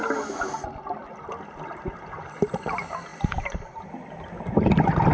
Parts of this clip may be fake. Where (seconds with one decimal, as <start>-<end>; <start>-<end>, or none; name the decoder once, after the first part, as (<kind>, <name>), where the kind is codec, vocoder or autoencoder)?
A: 1.0-2.6 (vocoder, BigVGAN v2); 3.1-4.2